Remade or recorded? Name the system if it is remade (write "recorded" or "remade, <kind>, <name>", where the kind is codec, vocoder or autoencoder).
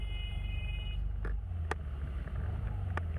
recorded